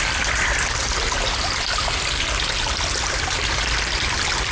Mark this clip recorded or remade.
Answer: recorded